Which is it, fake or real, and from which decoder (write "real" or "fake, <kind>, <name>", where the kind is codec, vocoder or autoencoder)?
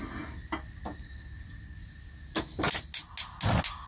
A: real